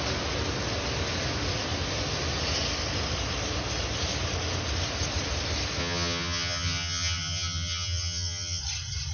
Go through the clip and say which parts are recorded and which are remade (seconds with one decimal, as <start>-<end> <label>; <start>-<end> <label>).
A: 0.0-5.8 recorded; 5.8-8.6 remade; 8.6-9.1 recorded